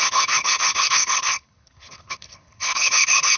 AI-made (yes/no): yes